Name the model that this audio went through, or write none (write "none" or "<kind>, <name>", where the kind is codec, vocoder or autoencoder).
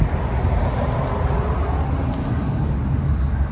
none